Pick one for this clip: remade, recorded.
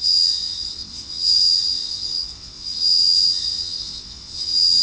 remade